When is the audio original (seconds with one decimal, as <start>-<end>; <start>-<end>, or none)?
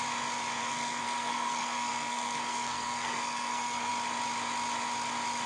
0.0-0.6; 3.9-5.5